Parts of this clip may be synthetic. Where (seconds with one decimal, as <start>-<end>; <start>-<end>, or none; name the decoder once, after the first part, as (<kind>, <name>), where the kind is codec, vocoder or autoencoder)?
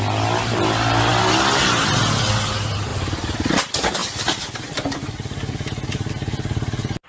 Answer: none